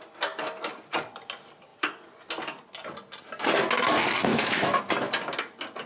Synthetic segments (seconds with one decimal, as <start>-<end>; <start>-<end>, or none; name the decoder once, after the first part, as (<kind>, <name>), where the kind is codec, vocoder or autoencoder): 4.3-4.8 (autoencoder, DAC-VAE)